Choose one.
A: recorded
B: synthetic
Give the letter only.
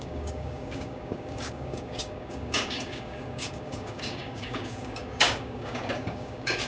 B